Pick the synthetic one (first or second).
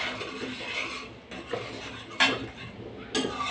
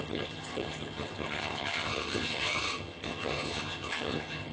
second